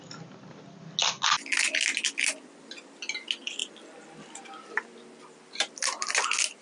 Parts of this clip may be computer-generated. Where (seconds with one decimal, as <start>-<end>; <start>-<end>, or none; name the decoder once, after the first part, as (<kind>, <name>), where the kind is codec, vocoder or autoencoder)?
none

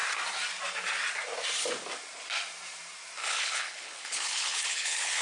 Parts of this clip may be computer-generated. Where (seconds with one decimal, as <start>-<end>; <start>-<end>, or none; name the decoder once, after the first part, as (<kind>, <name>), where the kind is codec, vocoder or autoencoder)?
3.2-5.2 (codec, HILCodec)

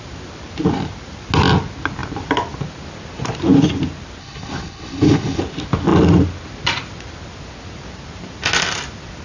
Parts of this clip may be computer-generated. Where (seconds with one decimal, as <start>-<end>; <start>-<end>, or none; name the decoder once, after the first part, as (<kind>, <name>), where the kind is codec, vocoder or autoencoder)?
4.2-5.4 (codec, HILCodec)